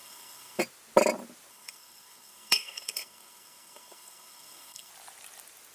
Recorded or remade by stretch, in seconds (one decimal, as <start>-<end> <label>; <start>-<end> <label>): 0.0-0.6 remade; 0.6-1.5 recorded; 1.5-4.9 remade; 4.9-5.7 recorded